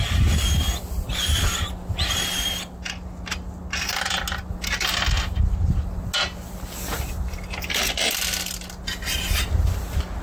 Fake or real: real